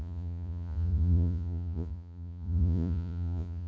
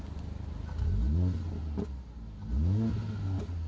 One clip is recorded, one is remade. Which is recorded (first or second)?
second